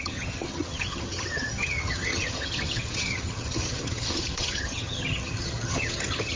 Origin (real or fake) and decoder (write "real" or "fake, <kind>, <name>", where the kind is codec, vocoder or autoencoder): fake, vocoder, HiFi-GAN